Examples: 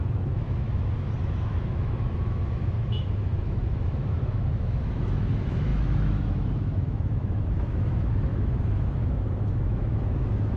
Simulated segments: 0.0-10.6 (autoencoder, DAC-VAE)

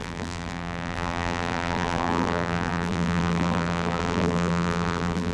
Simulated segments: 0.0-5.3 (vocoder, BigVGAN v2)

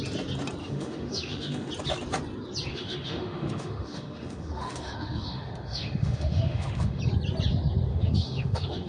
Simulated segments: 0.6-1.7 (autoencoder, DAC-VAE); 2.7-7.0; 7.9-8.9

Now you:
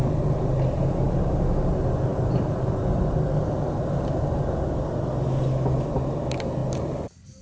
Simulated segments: none

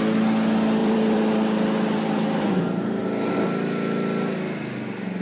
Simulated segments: 0.8-2.6 (vocoder, BigVGAN v2)